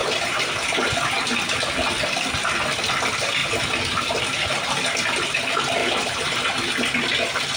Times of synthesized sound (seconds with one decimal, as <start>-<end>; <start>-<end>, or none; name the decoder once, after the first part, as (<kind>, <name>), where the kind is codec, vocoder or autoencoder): 0.0-1.2 (vocoder, BigVGAN v2); 3.4-4.7; 5.8-6.7